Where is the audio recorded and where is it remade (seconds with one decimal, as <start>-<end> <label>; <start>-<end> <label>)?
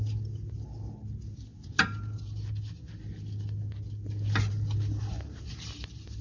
0.0-6.2 recorded